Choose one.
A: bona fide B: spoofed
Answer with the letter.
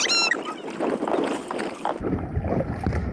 A